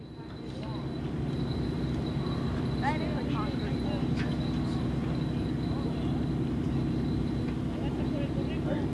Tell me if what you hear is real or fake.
real